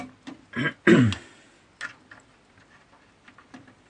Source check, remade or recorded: recorded